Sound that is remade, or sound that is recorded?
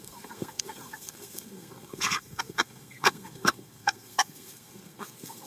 remade